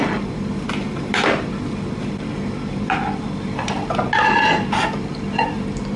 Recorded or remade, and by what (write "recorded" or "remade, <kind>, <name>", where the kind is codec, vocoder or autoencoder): recorded